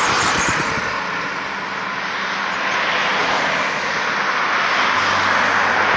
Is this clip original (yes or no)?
yes